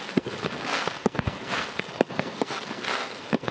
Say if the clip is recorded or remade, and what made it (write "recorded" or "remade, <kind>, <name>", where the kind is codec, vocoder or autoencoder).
remade, codec, SNAC